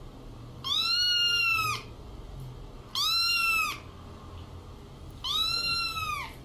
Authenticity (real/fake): real